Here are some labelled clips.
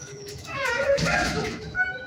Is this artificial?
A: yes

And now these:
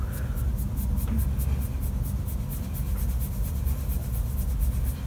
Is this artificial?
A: no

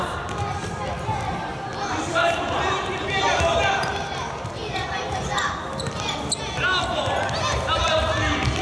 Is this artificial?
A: no